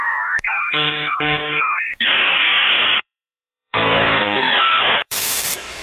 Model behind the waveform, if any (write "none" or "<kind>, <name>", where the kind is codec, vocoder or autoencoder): codec, DAC